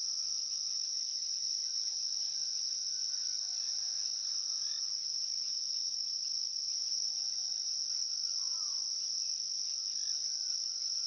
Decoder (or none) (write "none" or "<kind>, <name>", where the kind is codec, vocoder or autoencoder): none